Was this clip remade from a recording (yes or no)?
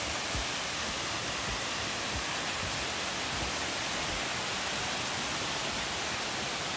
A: no